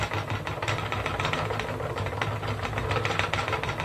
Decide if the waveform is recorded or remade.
recorded